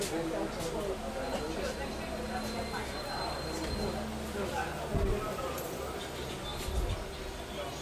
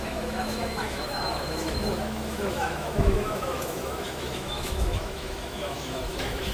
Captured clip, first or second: first